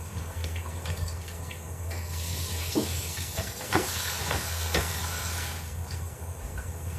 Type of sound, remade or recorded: remade